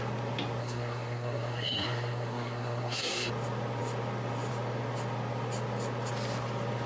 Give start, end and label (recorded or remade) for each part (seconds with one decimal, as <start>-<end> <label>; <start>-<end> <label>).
0.0-0.6 recorded; 0.6-3.3 remade; 3.3-6.9 recorded